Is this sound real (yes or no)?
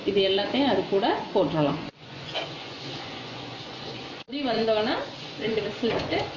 no